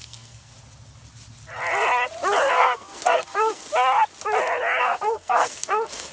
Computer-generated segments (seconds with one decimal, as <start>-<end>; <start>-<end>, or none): 0.0-0.5; 2.5-3.6; 4.8-6.1